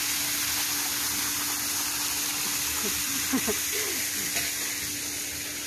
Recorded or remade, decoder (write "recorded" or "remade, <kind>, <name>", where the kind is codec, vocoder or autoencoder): recorded